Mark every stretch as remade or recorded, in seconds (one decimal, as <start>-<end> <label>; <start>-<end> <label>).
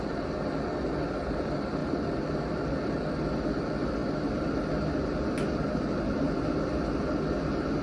0.0-7.8 recorded